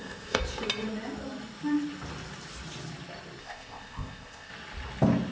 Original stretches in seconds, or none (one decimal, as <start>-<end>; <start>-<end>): 0.4-3.4; 4.5-5.3